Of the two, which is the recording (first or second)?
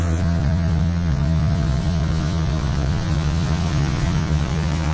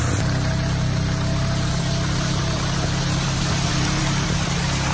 second